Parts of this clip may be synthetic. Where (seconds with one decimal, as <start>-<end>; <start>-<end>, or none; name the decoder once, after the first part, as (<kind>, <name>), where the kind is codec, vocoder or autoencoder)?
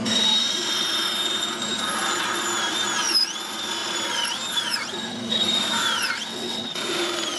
6.3-6.8 (vocoder, WaveNeXt)